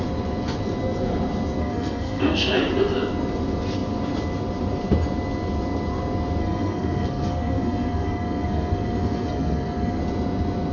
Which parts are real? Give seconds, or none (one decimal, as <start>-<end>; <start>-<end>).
0.0-1.6; 2.6-6.4; 10.0-10.7

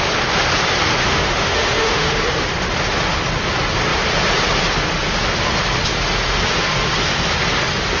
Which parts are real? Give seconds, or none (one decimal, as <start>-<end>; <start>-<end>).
0.0-1.0; 2.1-8.0